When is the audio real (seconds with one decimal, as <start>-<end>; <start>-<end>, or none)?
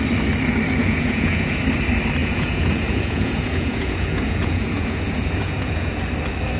0.0-0.8; 1.6-2.2; 6.0-6.6